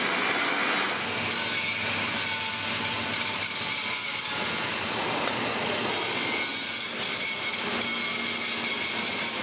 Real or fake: real